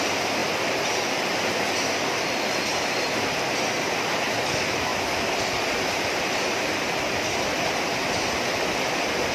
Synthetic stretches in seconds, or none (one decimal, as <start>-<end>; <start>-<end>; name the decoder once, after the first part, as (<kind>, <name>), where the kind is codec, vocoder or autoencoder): none